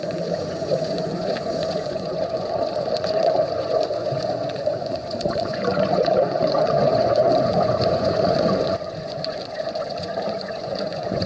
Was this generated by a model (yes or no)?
yes